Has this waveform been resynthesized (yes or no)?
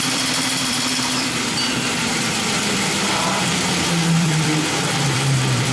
yes